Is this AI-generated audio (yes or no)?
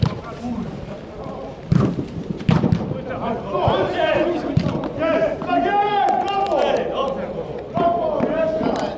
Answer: no